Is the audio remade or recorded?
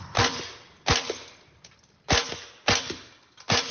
recorded